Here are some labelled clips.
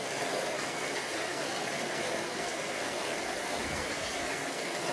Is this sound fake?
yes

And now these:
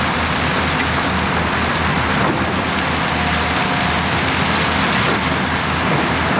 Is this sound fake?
no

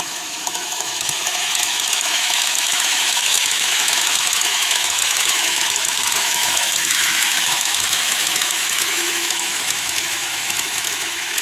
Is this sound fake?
yes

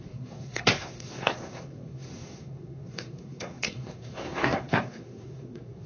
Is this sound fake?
yes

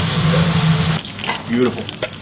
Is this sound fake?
no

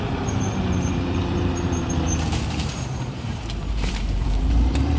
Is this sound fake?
yes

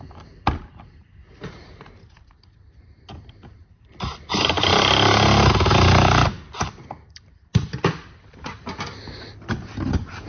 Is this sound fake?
no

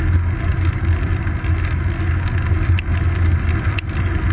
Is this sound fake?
no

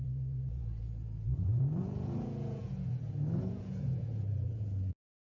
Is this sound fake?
yes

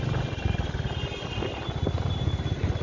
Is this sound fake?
no